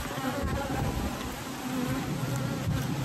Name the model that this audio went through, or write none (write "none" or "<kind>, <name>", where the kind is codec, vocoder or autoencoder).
none